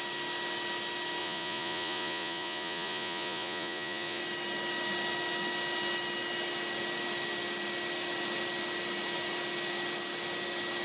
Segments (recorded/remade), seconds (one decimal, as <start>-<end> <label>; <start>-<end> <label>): 0.0-1.2 recorded; 1.2-4.2 remade; 4.2-10.8 recorded